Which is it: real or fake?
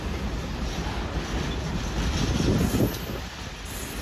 real